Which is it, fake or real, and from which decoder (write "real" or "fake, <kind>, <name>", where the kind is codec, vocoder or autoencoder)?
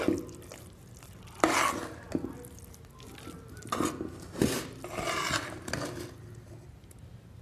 real